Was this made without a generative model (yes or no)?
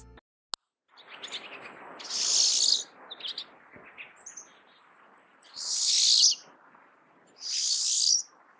yes